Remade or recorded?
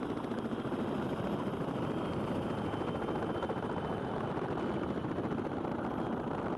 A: recorded